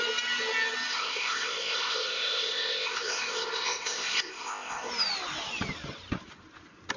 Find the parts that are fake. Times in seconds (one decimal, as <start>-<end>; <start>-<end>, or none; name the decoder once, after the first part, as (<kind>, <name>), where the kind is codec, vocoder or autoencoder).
0.9-4.9 (codec, ZipCodec)